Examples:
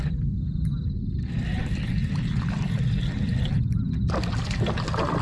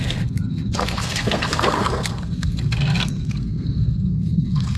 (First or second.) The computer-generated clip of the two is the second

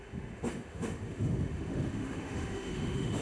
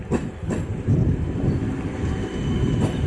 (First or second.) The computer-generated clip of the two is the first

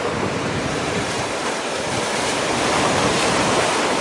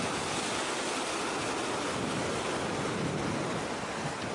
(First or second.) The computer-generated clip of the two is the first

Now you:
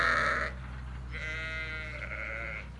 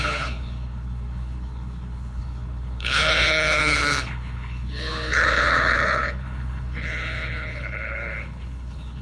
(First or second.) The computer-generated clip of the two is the second